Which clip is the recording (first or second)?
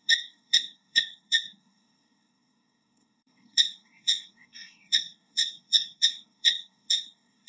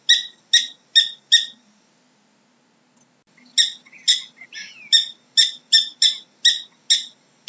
second